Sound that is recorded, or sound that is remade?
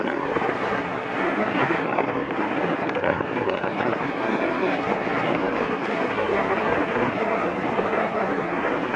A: remade